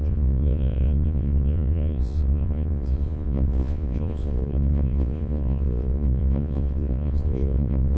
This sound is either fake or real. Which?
fake